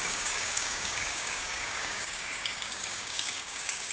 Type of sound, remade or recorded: remade